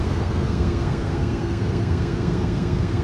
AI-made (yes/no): yes